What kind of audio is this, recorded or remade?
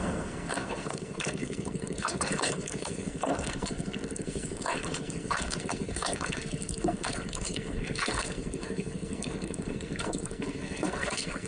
remade